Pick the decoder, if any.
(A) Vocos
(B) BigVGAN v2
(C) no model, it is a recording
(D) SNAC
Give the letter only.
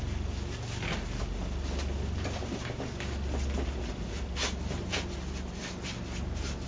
C